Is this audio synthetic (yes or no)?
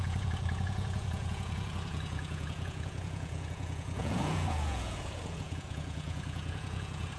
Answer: yes